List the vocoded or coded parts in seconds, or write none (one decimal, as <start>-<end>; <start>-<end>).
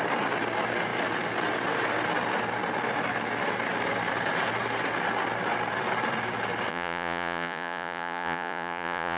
6.7-9.2